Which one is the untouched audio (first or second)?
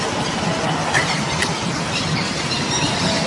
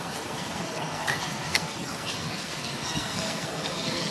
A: first